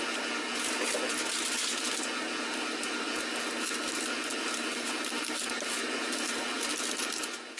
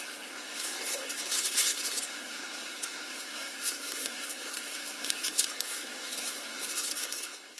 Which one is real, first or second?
first